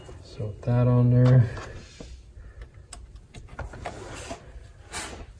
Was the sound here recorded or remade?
recorded